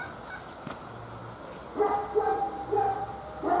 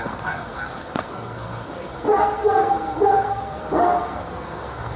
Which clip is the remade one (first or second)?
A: second